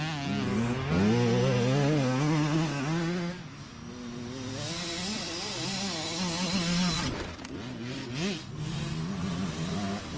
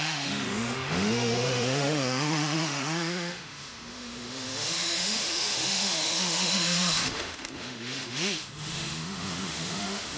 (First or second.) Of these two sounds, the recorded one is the first